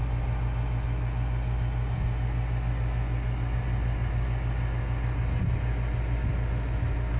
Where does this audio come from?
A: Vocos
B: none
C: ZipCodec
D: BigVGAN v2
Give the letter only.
B